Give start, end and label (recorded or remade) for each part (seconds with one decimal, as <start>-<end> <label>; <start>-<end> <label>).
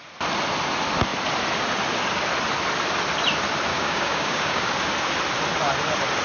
0.0-3.7 recorded; 3.7-4.7 remade; 4.7-6.2 recorded